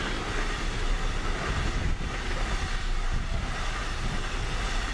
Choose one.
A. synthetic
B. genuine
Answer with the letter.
B